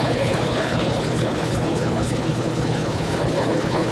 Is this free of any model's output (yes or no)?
no